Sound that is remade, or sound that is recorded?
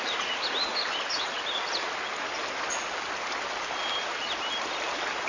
recorded